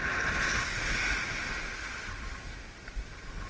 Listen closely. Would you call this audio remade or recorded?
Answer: recorded